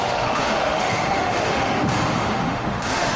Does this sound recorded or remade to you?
remade